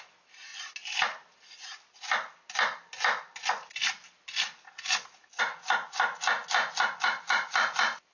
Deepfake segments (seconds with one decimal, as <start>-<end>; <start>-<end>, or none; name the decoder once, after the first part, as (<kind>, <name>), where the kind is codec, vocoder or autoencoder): none